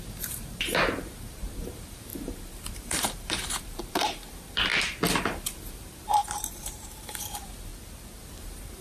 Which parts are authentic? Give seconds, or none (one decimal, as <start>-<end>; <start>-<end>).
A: 4.7-5.2; 7.7-8.4